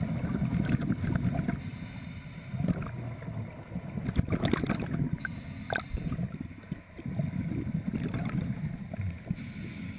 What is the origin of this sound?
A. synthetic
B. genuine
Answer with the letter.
B